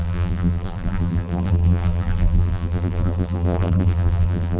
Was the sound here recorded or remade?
remade